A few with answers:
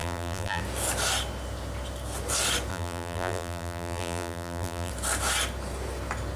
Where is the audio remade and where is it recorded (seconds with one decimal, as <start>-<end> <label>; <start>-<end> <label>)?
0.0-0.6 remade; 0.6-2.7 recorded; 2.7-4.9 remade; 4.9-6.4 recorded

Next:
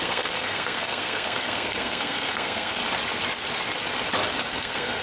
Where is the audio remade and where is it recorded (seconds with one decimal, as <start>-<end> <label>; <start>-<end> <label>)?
0.0-2.8 remade; 2.8-4.5 recorded; 4.5-5.0 remade

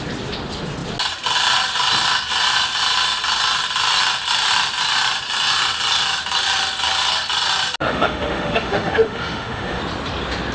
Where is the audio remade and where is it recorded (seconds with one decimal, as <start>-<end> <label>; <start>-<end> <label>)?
0.0-7.8 recorded; 7.8-9.8 remade; 9.8-10.5 recorded

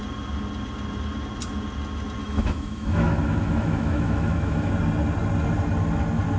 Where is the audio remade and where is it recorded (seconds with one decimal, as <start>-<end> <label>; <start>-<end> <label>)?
0.0-2.2 recorded; 2.2-4.7 remade; 4.7-6.4 recorded

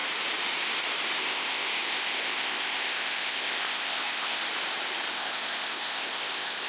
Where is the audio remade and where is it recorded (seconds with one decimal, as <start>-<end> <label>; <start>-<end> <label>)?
0.0-1.2 recorded; 1.2-4.4 remade; 4.4-5.1 recorded; 5.1-6.7 remade